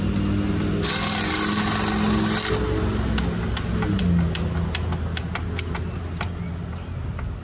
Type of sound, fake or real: real